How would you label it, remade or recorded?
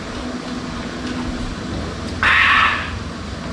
recorded